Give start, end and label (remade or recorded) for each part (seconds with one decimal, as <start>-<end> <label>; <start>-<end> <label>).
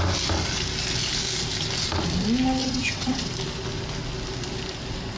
0.0-2.6 recorded; 2.6-3.3 remade; 3.3-5.2 recorded